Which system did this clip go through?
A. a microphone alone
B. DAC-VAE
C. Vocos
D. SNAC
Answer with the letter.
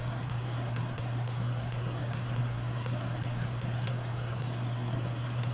D